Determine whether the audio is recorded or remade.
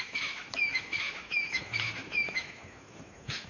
remade